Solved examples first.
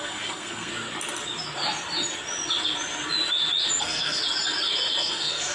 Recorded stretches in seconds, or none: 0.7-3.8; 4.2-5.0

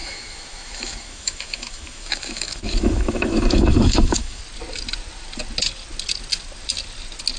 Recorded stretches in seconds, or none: 4.4-7.4

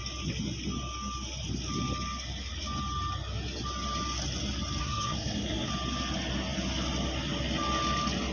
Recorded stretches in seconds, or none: 0.0-4.8; 5.7-8.3

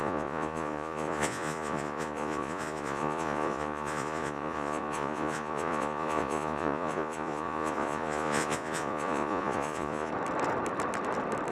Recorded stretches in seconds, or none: 10.1-11.5